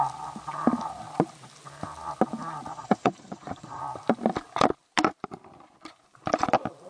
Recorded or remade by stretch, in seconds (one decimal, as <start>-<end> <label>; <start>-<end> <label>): 0.0-2.7 recorded; 2.7-3.8 remade; 3.8-6.9 recorded